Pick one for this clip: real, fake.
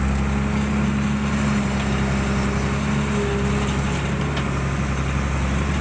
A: real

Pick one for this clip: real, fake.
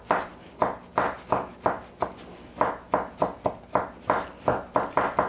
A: real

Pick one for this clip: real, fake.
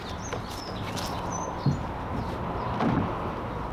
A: real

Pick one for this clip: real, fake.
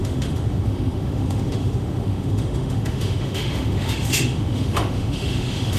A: fake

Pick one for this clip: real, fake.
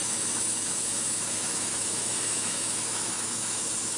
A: fake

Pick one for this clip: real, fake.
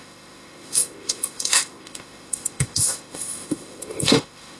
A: fake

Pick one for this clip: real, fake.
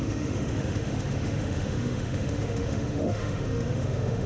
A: fake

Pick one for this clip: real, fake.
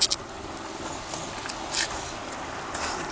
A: real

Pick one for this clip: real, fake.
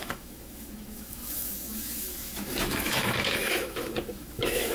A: fake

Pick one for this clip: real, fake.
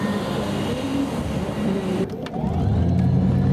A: real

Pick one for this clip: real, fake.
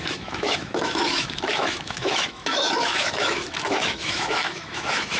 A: fake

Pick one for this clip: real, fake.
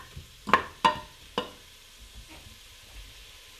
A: real